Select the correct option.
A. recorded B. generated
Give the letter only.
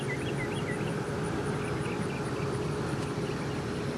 A